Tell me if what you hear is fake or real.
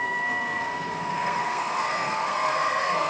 fake